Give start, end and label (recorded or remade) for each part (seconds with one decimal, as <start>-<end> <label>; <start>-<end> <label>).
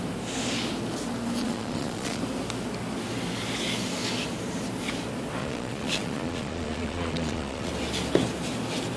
0.0-1.4 recorded; 1.4-2.2 remade; 2.2-5.4 recorded; 5.4-7.7 remade; 7.7-9.0 recorded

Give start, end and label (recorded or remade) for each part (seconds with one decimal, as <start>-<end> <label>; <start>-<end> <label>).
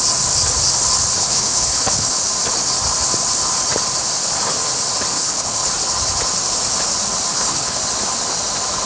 0.0-1.2 recorded; 1.2-2.1 remade; 2.1-5.1 recorded; 5.1-5.7 remade; 5.7-7.3 recorded; 7.3-7.8 remade; 7.8-8.9 recorded